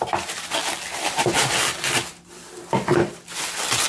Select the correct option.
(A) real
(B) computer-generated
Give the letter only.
A